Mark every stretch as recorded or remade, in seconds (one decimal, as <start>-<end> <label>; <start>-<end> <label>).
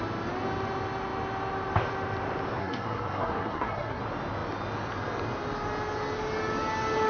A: 0.0-2.6 recorded; 2.6-4.0 remade; 4.0-7.1 recorded